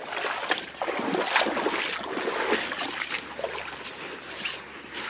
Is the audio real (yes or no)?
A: yes